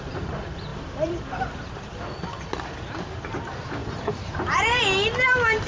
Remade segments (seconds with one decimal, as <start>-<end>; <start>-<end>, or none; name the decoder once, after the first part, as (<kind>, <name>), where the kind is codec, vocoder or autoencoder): 0.7-1.4 (vocoder, BigVGAN v2); 3.8-4.8